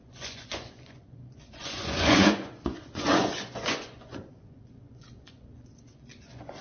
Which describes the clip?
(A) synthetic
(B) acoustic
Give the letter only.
A